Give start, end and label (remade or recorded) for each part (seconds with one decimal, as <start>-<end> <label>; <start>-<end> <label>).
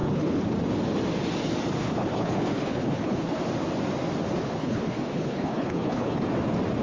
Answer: 0.0-0.5 remade; 0.5-1.8 recorded; 1.8-3.4 remade; 3.4-4.4 recorded; 4.4-6.2 remade; 6.2-6.8 recorded